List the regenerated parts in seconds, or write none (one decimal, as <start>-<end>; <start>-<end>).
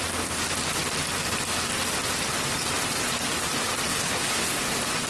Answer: 3.9-4.6